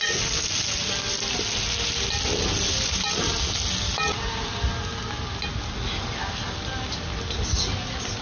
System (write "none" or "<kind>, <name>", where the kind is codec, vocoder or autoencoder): none